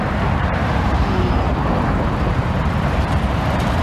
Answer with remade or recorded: remade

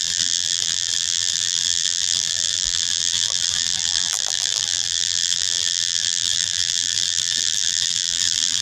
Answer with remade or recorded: remade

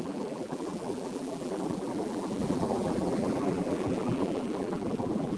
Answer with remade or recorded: remade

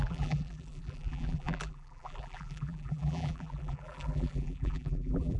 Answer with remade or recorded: remade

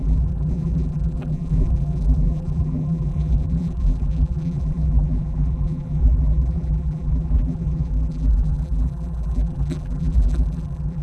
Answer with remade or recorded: remade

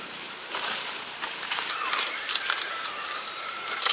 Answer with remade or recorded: remade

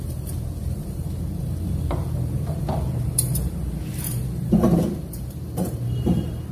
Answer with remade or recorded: remade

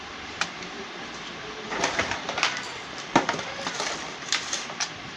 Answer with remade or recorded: remade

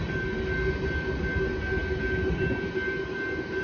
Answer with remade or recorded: recorded